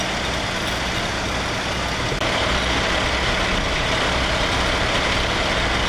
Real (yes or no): yes